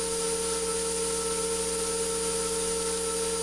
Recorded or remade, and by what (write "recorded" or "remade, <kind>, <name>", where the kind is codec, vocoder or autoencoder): recorded